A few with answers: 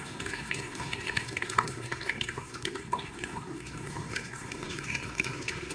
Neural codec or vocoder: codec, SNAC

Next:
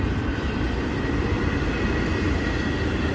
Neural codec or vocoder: none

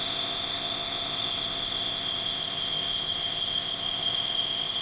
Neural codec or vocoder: codec, ZipCodec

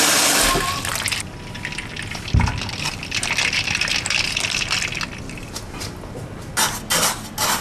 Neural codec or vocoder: none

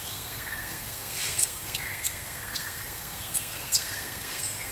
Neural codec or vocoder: codec, SNAC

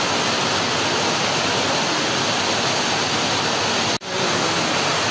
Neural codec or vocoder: none